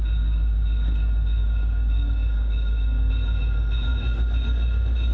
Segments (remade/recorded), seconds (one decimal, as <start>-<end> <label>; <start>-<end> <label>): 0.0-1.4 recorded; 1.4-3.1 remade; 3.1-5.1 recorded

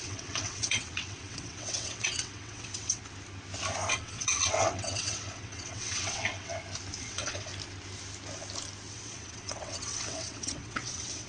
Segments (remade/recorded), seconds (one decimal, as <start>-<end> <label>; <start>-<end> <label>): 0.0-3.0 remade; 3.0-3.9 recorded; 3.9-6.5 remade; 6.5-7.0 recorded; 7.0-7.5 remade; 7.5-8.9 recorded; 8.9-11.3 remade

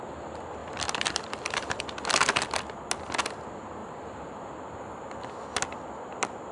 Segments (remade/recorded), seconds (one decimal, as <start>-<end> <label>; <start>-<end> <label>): 0.0-0.6 recorded; 0.6-1.8 remade; 1.8-3.8 recorded; 3.8-5.3 remade; 5.3-6.5 recorded

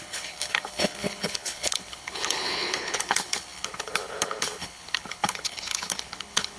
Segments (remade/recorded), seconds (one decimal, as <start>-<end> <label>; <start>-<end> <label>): 0.0-6.6 remade

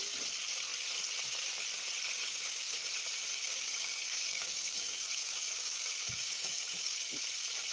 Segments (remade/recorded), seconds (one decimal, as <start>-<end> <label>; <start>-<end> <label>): 0.0-2.2 recorded; 2.2-2.9 remade; 2.9-3.3 recorded; 3.3-7.2 remade; 7.2-7.7 recorded

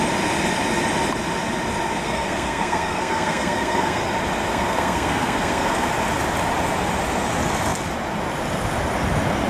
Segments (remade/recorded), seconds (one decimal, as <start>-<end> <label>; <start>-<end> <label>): 0.0-2.0 recorded; 2.0-4.0 remade; 4.0-4.5 recorded; 4.5-5.9 remade; 5.9-9.5 recorded